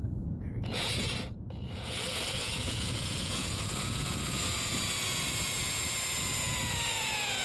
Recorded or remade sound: remade